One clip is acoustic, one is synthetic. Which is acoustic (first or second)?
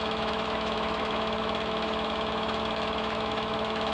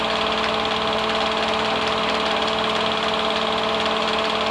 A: second